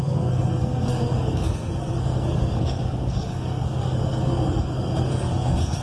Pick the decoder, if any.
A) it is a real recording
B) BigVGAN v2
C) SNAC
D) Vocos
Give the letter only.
C